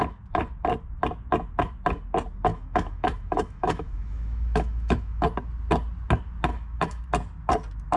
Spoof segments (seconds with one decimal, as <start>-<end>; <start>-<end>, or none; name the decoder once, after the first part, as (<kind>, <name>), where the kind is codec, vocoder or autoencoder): 2.5-5.2 (autoencoder, DAC-VAE); 6.5-7.1